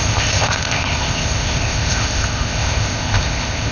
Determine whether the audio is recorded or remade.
remade